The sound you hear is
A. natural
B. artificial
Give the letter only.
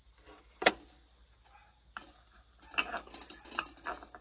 A